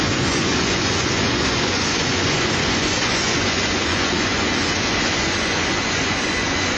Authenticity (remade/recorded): remade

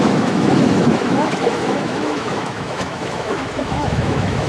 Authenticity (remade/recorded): remade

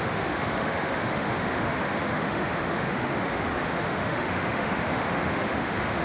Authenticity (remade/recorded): remade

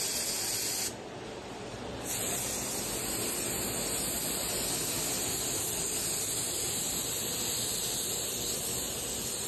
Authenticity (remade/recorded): recorded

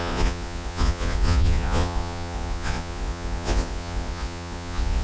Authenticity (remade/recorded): remade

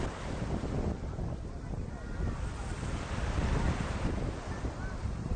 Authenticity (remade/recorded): recorded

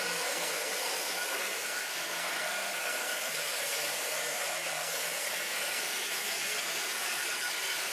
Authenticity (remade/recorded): remade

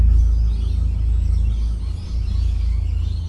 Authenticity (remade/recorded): recorded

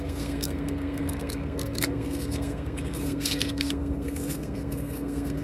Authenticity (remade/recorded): remade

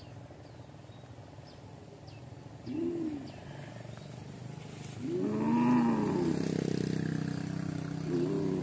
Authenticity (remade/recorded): recorded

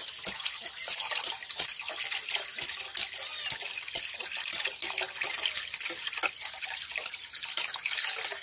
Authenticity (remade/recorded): recorded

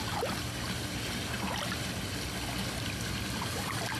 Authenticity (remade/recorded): recorded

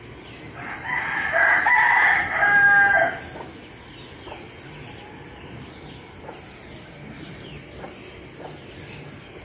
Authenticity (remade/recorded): recorded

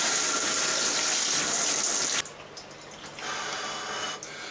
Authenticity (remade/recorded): recorded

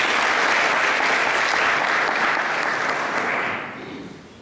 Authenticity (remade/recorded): recorded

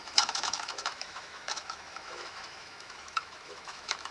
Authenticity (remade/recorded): remade